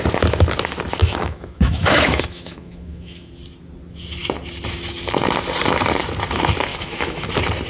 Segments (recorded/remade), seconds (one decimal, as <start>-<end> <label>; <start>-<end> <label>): 0.0-1.0 recorded; 1.0-3.3 remade; 3.3-6.7 recorded; 6.7-7.3 remade; 7.3-7.7 recorded